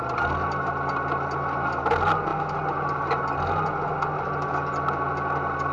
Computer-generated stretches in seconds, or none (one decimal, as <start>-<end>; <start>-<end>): none